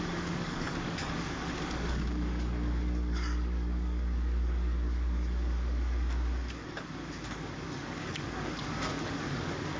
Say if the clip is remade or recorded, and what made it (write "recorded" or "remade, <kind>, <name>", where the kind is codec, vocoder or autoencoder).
remade, codec, DAC